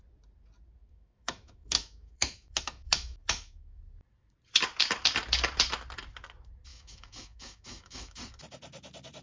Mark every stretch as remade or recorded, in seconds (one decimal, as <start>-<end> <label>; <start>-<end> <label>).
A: 0.0-0.8 recorded; 0.8-3.8 remade; 3.8-6.7 recorded; 6.7-8.2 remade; 8.2-9.2 recorded